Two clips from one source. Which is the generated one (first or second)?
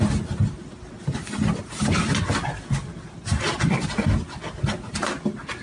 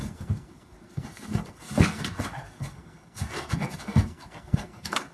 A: second